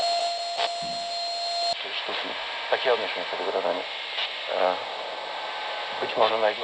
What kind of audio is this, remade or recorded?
recorded